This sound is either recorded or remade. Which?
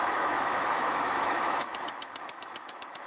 remade